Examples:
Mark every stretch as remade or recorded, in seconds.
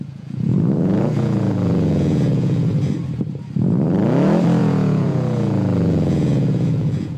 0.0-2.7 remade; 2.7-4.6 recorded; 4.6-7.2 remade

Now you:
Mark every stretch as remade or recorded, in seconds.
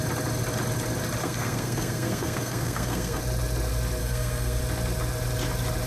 0.0-1.2 recorded; 1.2-3.2 remade; 3.2-4.0 recorded; 4.0-4.6 remade; 4.6-5.9 recorded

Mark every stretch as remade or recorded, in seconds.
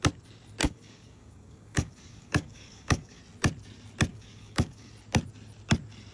0.0-0.6 recorded; 0.6-3.2 remade; 3.2-4.1 recorded; 4.1-4.9 remade; 4.9-6.1 recorded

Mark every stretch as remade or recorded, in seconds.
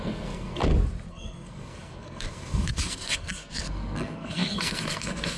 0.0-0.6 remade; 0.6-1.1 recorded; 1.1-5.4 remade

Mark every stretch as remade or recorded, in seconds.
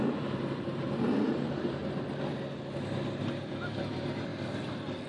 0.0-1.8 remade; 1.8-3.2 recorded; 3.2-4.3 remade; 4.3-5.1 recorded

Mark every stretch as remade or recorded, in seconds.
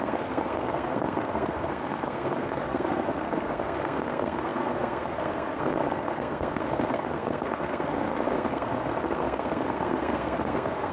0.0-10.9 remade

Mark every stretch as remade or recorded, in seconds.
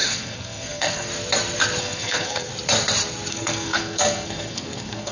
0.0-1.1 remade; 1.1-1.8 recorded; 1.8-2.5 remade; 2.5-3.3 recorded; 3.3-5.1 remade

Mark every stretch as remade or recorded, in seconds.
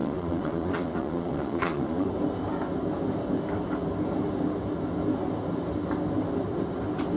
0.0-2.1 remade; 2.1-7.2 recorded